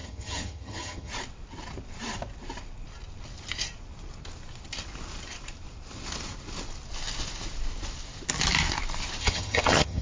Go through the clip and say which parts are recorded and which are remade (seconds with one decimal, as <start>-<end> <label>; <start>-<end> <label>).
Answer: 0.0-1.1 remade; 1.1-9.2 recorded; 9.2-10.0 remade